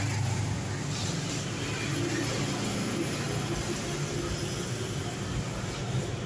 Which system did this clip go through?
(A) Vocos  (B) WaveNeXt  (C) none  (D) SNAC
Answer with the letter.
C